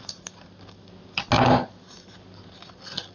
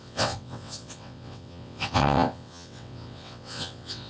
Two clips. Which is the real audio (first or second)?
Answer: first